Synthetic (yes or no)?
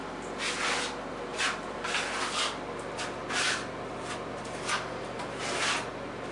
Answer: no